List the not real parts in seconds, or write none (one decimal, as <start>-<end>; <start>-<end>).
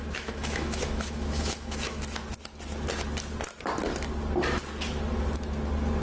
0.0-2.0